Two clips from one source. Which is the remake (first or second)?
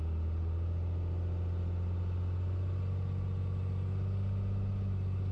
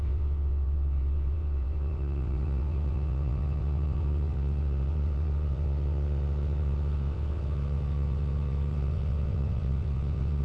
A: second